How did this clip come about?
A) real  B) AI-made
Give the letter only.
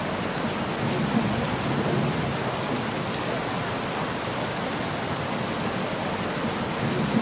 A